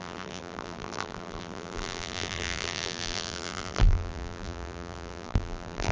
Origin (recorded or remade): remade